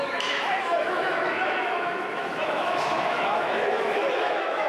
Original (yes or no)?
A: no